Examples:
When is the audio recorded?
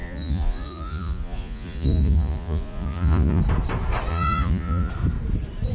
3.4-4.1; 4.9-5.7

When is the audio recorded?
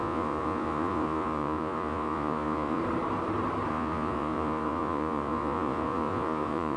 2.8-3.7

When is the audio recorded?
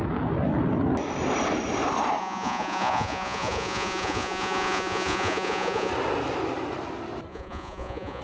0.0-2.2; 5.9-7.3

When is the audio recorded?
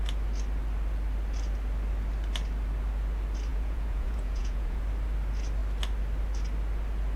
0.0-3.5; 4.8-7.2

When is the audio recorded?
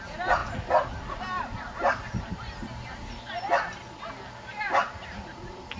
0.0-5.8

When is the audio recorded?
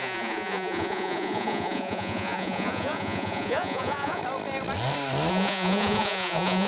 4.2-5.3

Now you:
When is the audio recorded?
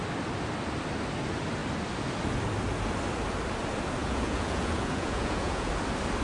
0.0-4.0; 5.7-6.2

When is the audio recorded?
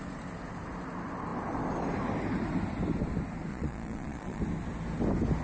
0.0-3.5; 4.4-5.4